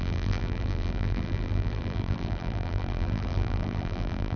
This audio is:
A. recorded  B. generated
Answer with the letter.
B